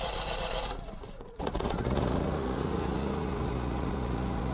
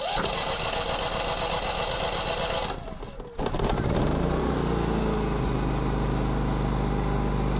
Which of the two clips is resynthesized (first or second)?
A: first